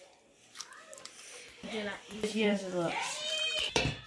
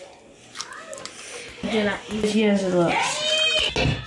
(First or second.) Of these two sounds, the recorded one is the second